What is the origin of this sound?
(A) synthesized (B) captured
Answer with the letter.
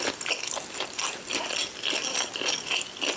B